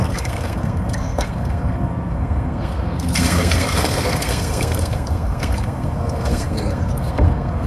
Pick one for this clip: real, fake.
fake